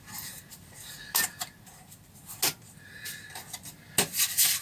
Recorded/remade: recorded